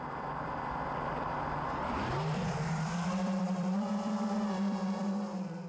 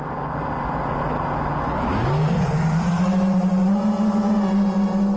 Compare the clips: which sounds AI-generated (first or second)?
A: first